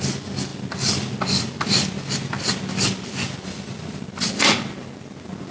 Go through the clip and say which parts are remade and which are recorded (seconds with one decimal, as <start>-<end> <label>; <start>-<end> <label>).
0.0-5.5 recorded